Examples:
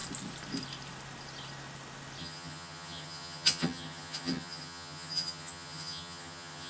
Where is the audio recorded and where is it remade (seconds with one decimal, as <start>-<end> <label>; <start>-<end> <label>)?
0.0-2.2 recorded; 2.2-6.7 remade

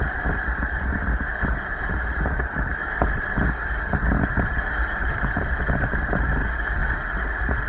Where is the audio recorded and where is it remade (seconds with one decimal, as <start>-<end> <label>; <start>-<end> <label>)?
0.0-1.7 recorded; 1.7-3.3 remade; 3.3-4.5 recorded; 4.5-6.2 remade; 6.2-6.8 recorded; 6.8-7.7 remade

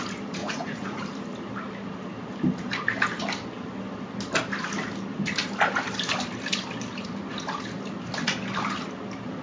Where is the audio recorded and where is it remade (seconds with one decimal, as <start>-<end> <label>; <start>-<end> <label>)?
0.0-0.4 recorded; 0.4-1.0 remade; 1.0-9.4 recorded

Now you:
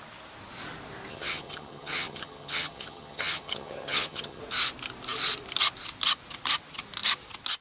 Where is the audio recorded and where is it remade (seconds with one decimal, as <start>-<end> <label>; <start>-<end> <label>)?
0.0-1.1 recorded; 1.1-4.4 remade; 4.4-7.6 recorded

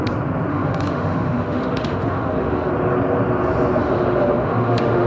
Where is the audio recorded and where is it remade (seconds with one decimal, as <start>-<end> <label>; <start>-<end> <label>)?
0.0-0.5 recorded; 0.5-2.7 remade; 2.7-3.8 recorded; 3.8-5.1 remade

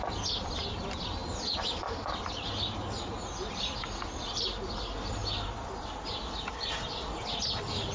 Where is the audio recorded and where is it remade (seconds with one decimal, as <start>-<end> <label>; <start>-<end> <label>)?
0.0-7.9 recorded

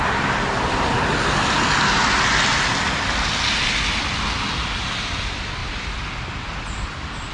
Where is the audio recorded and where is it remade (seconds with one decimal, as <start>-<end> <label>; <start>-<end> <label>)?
0.0-7.3 recorded

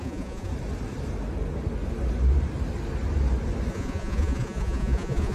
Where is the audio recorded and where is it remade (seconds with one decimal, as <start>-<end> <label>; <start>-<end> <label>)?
0.0-0.5 remade; 0.5-3.7 recorded; 3.7-5.3 remade